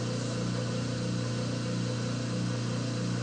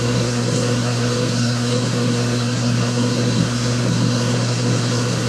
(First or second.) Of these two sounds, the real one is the first